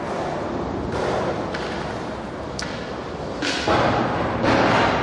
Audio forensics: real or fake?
real